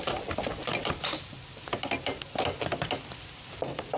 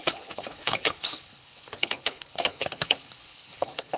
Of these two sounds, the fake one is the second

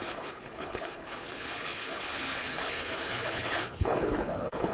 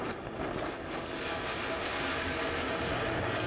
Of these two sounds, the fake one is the first